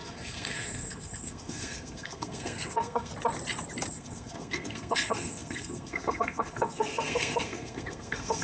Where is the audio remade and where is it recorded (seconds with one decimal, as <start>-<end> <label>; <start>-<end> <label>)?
0.0-3.1 remade; 3.1-3.9 recorded; 3.9-8.4 remade